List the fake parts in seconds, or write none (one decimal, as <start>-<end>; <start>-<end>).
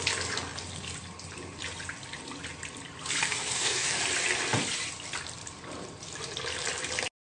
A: 3.2-4.0